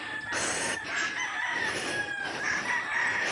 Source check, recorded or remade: recorded